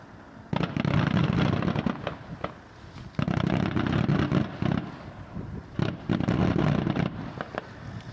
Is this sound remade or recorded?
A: recorded